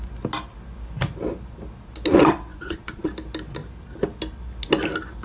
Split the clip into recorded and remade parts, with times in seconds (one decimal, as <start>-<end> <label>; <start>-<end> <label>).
0.0-2.1 recorded; 2.1-3.1 remade; 3.1-5.2 recorded